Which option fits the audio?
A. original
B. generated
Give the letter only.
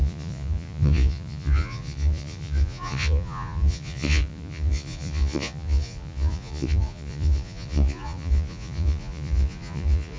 B